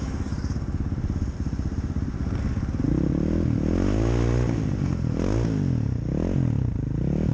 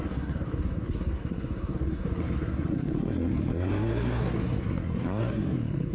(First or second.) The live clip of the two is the first